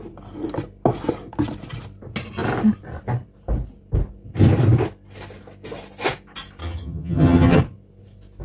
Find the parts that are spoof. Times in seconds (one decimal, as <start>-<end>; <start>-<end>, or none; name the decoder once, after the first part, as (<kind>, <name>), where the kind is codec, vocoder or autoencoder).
6.6-7.6 (vocoder, HiFi-GAN)